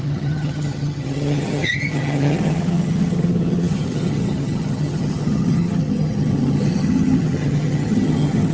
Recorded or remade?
remade